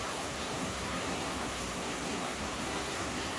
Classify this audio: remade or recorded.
remade